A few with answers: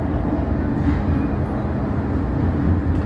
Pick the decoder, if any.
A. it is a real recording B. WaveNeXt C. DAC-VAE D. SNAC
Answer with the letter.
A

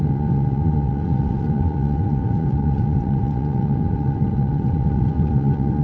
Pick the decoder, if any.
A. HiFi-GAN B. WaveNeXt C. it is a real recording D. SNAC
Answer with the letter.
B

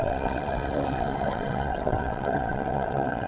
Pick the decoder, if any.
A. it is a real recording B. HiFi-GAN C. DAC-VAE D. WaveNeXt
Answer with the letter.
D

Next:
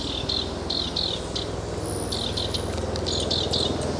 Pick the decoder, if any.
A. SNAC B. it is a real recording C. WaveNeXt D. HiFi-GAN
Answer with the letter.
B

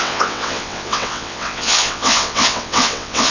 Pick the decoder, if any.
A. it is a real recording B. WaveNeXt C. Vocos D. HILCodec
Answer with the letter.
B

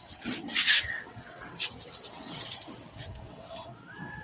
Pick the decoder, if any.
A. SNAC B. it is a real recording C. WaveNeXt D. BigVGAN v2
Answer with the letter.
C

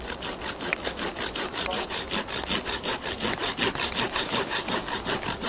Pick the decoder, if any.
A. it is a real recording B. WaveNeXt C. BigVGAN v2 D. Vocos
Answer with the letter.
A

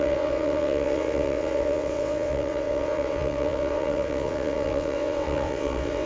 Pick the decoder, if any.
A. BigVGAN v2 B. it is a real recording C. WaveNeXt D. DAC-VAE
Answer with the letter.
C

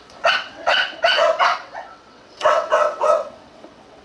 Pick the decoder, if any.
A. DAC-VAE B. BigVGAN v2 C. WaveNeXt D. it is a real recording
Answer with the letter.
C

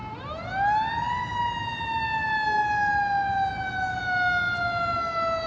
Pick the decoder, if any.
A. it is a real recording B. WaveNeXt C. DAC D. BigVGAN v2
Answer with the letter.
A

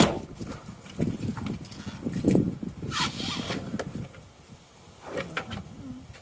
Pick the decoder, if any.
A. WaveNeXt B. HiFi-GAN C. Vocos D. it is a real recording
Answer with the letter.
D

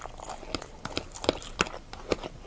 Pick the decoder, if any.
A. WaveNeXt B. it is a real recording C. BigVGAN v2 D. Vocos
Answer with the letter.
B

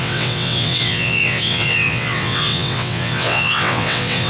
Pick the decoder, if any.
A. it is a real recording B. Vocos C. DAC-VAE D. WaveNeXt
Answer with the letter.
D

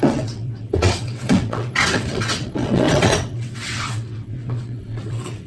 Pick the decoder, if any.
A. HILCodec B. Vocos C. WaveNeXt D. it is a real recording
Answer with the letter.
C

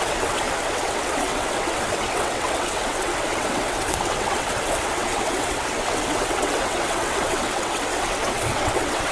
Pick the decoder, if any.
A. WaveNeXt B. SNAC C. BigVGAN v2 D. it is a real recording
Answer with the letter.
A